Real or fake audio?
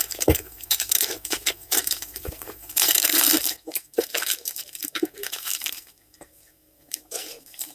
fake